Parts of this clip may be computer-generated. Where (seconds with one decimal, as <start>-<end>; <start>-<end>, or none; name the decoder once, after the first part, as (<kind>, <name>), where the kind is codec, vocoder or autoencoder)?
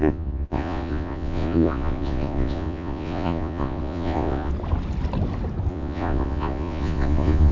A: 0.0-4.5 (vocoder, Vocos); 5.7-7.5